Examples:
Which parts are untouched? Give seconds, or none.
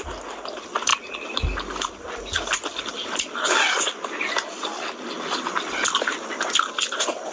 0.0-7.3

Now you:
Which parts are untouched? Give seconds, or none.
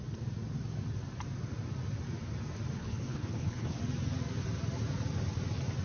0.0-2.8; 3.8-5.8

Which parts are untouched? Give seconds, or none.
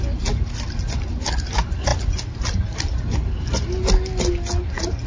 0.0-5.1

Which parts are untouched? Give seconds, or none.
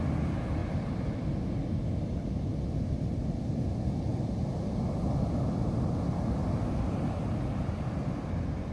0.0-8.7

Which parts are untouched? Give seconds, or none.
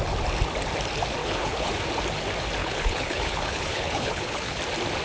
0.0-1.2; 1.7-2.6; 4.6-5.0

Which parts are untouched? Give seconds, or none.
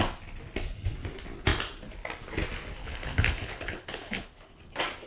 0.0-2.8; 4.6-5.1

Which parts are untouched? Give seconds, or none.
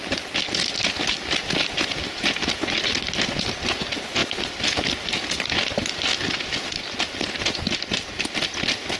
0.0-9.0